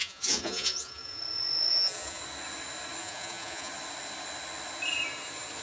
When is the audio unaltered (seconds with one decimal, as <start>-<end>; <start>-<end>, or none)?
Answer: 1.2-1.7; 2.2-3.0; 3.7-5.6